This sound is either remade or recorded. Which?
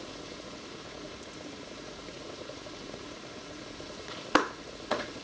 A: remade